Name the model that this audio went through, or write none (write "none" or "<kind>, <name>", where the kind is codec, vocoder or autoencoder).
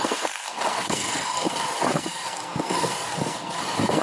codec, SNAC